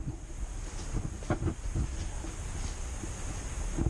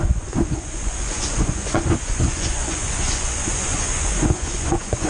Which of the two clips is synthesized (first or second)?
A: second